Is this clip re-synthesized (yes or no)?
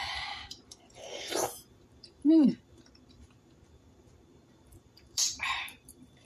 yes